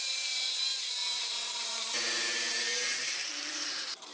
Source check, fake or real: fake